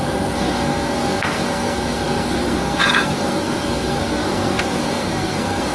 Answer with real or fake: fake